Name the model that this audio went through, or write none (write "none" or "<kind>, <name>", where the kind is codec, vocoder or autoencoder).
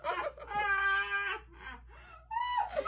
none